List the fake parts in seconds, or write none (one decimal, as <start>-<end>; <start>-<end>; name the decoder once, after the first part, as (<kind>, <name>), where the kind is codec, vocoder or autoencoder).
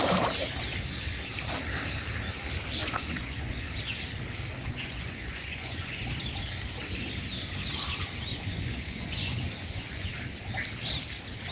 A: 2.8-3.7 (vocoder, Vocos); 4.6-6.2; 8.3-10.1